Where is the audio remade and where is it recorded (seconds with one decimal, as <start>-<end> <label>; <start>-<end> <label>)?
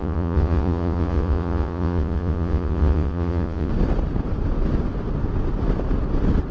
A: 0.0-3.7 remade; 3.7-6.5 recorded